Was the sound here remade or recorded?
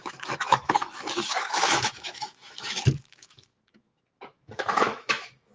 remade